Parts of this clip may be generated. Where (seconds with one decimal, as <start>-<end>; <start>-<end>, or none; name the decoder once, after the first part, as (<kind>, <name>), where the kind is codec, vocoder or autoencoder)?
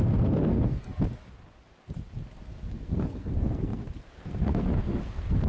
0.0-0.9 (codec, SNAC); 2.6-5.5